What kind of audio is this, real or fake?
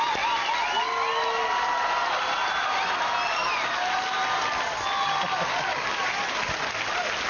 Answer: real